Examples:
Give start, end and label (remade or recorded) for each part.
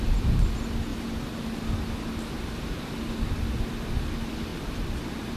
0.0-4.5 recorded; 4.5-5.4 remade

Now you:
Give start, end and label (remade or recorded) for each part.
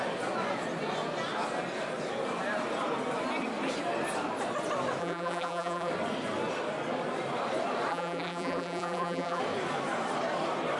0.0-5.0 recorded; 5.0-5.9 remade; 5.9-7.9 recorded; 7.9-9.4 remade; 9.4-10.8 recorded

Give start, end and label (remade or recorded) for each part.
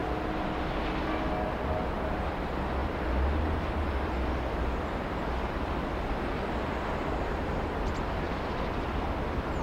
0.0-9.6 recorded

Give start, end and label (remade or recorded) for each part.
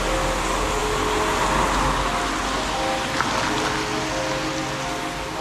0.0-5.4 recorded